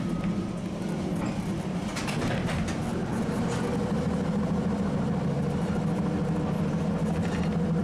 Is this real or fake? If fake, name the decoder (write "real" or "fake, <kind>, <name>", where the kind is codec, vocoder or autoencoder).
real